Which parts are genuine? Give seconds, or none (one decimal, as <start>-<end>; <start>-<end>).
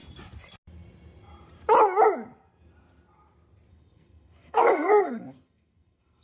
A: 0.0-3.7